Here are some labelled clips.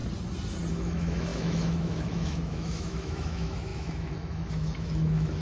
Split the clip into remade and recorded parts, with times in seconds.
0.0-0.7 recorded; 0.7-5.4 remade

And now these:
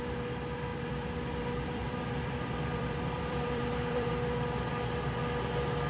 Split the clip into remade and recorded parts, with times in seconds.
0.0-0.7 recorded; 0.7-4.1 remade; 4.1-5.9 recorded

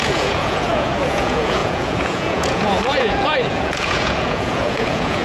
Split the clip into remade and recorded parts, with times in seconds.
0.0-5.2 remade

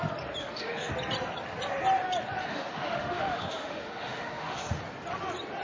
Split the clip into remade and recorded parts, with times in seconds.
0.0-0.4 recorded; 0.4-0.9 remade; 0.9-2.4 recorded; 2.4-4.8 remade; 4.8-5.6 recorded

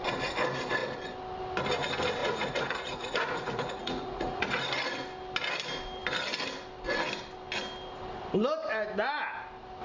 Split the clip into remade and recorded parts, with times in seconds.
0.0-2.2 recorded; 2.2-4.6 remade; 4.6-9.8 recorded